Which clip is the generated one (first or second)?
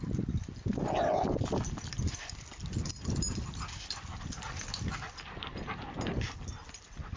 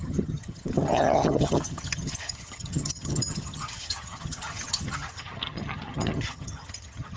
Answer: second